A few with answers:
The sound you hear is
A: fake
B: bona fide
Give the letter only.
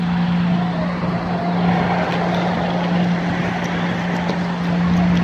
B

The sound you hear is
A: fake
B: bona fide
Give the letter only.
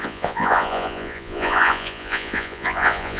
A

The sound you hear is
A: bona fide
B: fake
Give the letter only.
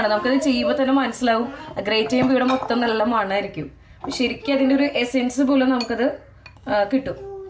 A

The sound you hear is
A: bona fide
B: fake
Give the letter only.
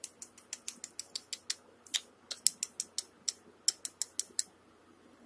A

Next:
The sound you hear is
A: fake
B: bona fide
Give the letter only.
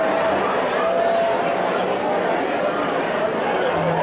B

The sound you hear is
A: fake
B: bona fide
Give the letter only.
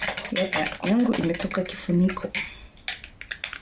B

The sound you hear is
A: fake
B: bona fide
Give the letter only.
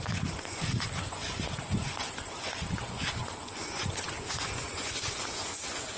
A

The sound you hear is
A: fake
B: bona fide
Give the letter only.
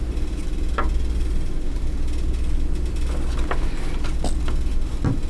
B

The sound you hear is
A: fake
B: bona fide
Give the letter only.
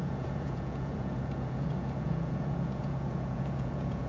A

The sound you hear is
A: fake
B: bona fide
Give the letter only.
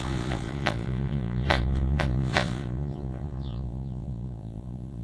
A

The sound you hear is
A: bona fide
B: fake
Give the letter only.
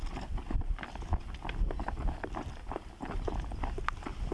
A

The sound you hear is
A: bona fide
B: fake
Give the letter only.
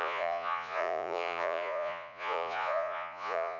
B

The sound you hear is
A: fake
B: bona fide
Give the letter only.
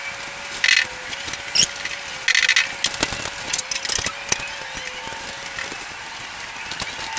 B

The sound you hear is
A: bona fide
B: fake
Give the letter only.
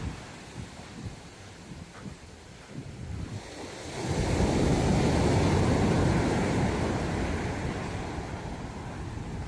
A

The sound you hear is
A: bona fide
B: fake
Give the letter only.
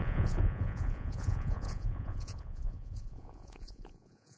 B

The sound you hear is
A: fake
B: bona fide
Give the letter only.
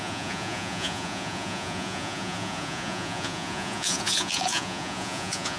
A